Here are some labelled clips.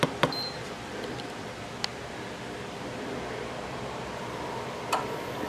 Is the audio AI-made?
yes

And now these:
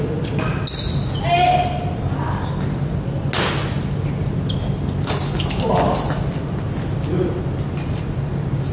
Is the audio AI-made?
no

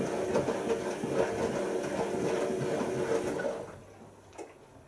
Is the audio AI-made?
no